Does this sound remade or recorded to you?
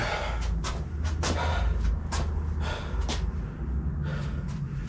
recorded